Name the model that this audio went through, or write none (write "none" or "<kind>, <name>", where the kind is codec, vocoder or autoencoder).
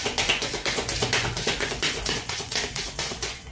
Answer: vocoder, Vocos